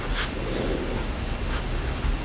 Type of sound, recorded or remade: recorded